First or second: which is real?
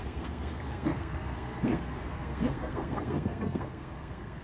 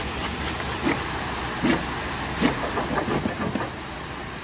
second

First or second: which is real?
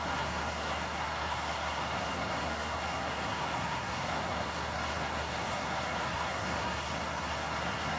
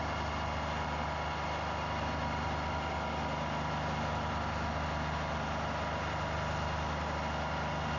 second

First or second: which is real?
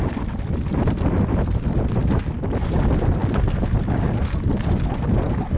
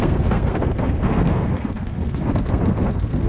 first